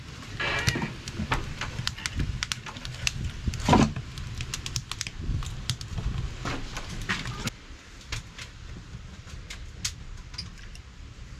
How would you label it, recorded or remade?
recorded